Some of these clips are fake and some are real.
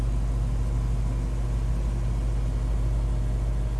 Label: real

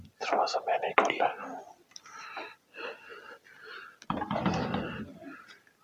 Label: real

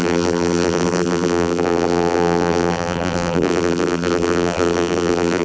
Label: fake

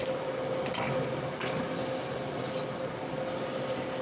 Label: real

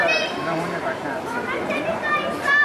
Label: fake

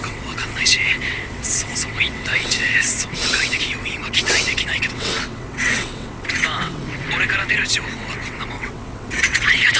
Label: fake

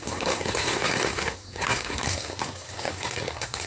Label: fake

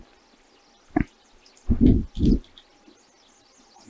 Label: real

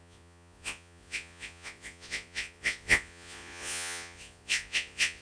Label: fake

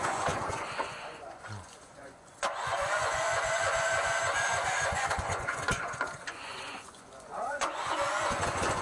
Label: fake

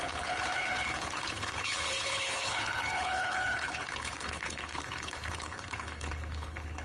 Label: fake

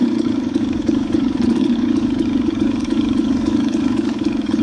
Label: fake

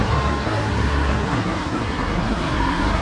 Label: fake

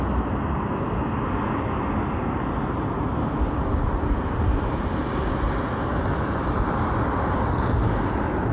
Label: real